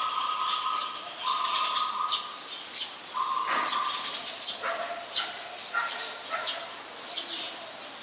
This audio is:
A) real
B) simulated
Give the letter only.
A